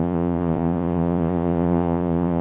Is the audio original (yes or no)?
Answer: no